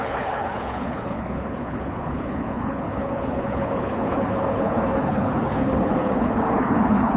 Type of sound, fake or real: fake